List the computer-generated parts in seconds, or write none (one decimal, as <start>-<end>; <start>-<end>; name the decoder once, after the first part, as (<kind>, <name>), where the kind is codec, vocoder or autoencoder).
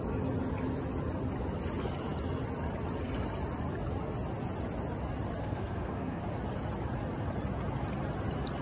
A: 5.4-6.2 (codec, SNAC)